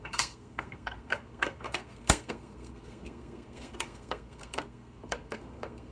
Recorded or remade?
remade